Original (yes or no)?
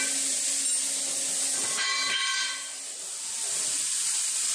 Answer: yes